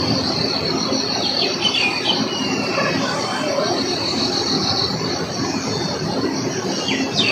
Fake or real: real